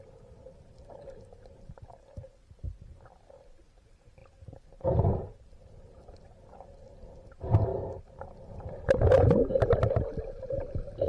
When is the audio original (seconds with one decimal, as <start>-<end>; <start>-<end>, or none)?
0.0-11.1